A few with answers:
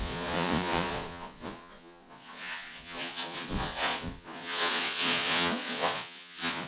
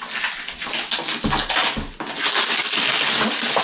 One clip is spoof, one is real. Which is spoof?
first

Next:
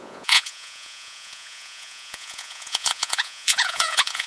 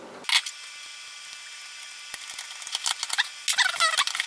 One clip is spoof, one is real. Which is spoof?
first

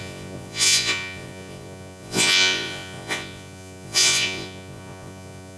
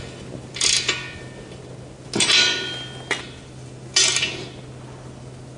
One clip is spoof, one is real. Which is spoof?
first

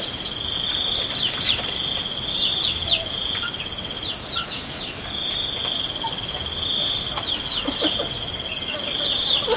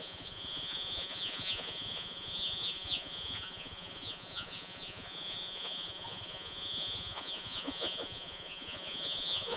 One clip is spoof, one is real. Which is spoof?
second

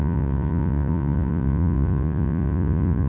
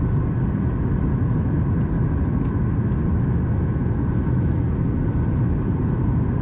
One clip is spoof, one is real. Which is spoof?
first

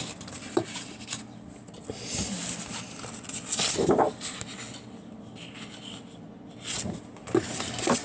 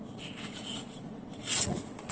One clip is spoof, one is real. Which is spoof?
second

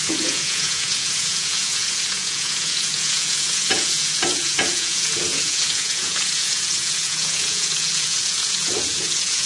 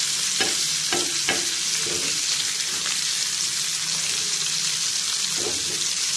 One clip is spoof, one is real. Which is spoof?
first